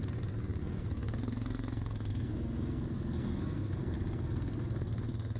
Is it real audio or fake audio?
fake